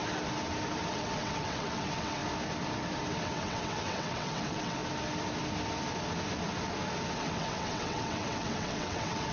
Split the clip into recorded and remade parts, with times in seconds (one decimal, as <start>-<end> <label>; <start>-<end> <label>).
0.0-0.9 recorded; 0.9-2.2 remade; 2.2-3.2 recorded; 3.2-4.8 remade; 4.8-7.2 recorded; 7.2-9.3 remade